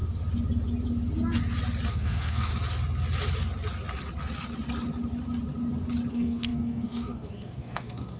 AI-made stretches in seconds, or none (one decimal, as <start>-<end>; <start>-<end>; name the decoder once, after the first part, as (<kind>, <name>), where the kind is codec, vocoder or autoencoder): 1.9-2.5 (codec, SNAC); 6.1-8.2